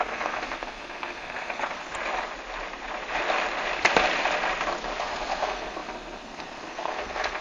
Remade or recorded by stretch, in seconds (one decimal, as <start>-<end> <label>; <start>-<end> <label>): 0.0-1.9 remade; 1.9-5.0 recorded; 5.0-7.4 remade